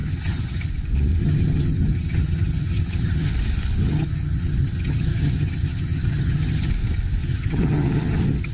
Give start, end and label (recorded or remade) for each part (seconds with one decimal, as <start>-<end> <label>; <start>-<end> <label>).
0.0-0.7 remade; 0.7-1.2 recorded; 1.2-3.3 remade; 3.3-3.8 recorded; 3.8-6.7 remade; 6.7-7.2 recorded; 7.2-8.5 remade